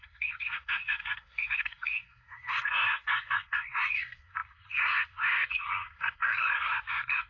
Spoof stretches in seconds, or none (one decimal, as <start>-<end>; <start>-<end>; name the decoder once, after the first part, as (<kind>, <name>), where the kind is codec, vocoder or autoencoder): 0.0-7.3 (codec, SNAC)